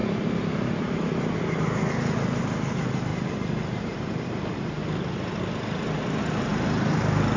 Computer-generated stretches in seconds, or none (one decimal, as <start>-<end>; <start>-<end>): 0.0-1.0; 3.1-4.8